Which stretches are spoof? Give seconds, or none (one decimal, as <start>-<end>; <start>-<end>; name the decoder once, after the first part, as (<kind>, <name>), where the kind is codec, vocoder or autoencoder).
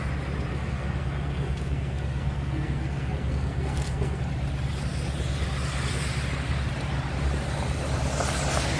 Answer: 0.5-4.2 (codec, SNAC)